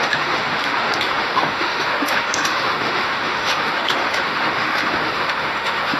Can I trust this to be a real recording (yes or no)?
no